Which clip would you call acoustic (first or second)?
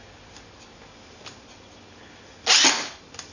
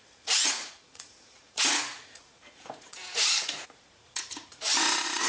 first